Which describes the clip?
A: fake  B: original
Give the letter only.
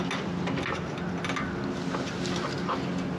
B